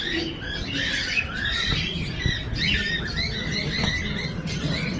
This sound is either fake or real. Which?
real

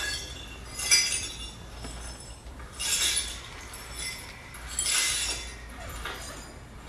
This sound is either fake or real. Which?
real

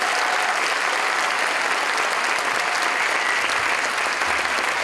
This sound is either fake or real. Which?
real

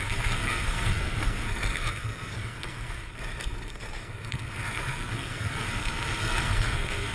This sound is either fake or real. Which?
fake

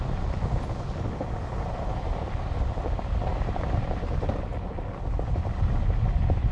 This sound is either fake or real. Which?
real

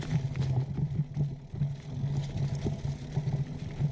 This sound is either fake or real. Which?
real